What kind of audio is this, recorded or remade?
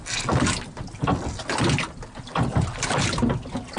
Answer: recorded